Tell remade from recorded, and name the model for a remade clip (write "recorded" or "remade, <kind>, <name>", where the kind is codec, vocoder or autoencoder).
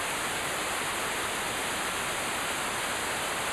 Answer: recorded